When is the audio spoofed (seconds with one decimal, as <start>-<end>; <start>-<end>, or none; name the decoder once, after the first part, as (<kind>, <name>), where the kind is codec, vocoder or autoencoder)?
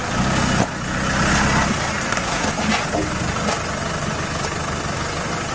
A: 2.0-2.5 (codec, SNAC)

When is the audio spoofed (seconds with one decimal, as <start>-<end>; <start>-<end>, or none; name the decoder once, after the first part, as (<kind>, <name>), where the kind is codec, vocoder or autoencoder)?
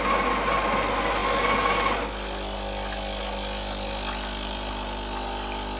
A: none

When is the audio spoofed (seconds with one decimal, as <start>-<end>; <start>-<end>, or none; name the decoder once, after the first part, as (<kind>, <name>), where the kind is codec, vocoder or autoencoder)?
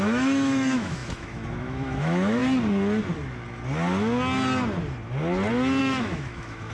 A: 0.0-2.4 (autoencoder, DAC-VAE); 5.8-6.7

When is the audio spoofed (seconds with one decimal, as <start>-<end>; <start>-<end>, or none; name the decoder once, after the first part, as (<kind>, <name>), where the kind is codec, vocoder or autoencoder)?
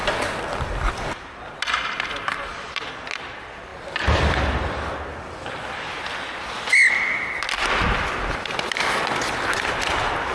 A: 3.7-4.6 (vocoder, BigVGAN v2)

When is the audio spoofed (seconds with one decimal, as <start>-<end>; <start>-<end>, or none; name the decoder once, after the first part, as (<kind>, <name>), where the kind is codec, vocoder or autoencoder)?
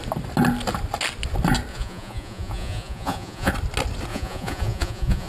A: 1.7-3.5 (vocoder, Vocos); 4.1-5.3